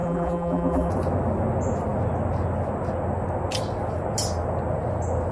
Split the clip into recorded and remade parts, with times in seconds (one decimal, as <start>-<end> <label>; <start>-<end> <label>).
0.0-0.9 remade; 0.9-5.3 recorded